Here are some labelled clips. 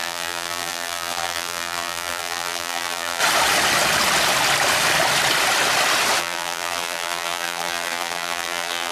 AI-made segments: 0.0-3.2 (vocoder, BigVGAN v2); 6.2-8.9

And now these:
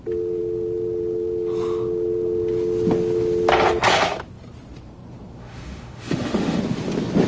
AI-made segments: 5.4-6.6 (autoencoder, DAC-VAE)

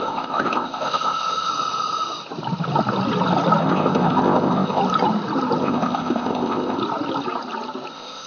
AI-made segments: 0.0-1.5 (codec, ZipCodec); 3.6-4.8; 5.6-6.8; 7.9-8.3